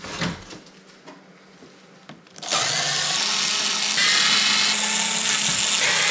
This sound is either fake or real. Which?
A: real